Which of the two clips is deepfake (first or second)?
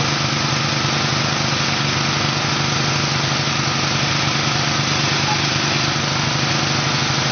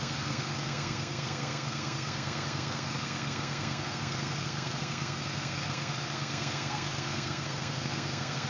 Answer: second